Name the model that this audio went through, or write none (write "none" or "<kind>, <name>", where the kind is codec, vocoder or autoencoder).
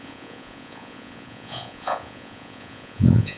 vocoder, Vocos